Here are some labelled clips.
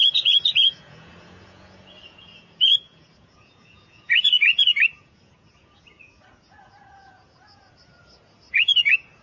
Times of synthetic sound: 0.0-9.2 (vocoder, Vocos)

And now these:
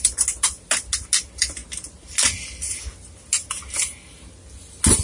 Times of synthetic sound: none

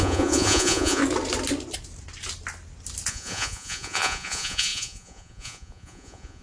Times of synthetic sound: 0.0-1.0 (vocoder, Vocos); 3.1-6.4

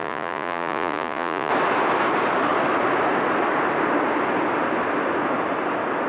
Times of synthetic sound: 0.0-1.5 (vocoder, Vocos)

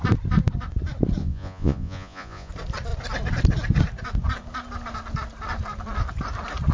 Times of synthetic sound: 1.2-2.5 (vocoder, Vocos)